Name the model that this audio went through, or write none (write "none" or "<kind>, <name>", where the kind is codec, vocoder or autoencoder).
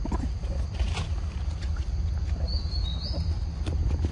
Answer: none